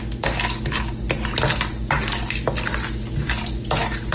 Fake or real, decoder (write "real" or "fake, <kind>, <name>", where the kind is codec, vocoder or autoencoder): real